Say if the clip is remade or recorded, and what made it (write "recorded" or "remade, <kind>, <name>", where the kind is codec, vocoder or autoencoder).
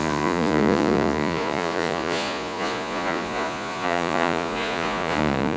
remade, vocoder, Vocos